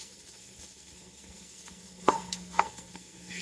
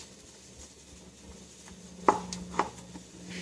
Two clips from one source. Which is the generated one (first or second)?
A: first